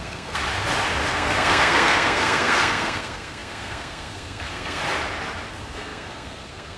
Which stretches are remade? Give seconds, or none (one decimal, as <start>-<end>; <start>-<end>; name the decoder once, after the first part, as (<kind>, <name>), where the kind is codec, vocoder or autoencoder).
0.0-0.4 (codec, SNAC); 1.1-4.8; 5.5-6.8